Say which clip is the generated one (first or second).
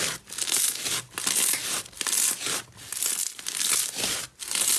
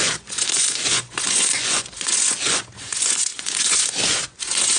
second